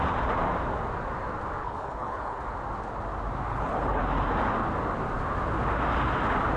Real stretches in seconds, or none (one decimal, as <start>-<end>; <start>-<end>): 0.0-1.6; 2.4-3.5; 4.0-6.6